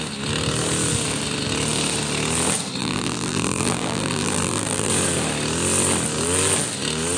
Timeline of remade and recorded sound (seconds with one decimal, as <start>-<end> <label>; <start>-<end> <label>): 0.0-2.8 recorded; 2.8-4.9 remade; 4.9-7.2 recorded